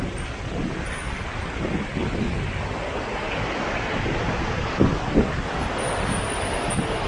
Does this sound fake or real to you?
real